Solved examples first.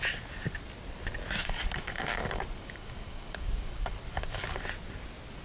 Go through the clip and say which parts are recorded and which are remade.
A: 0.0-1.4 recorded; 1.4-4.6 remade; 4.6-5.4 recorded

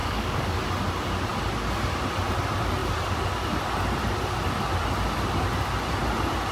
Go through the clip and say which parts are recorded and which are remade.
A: 0.0-0.6 remade; 0.6-6.5 recorded

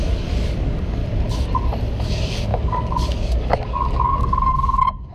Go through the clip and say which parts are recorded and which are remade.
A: 0.0-1.0 remade; 1.0-1.9 recorded; 1.9-5.1 remade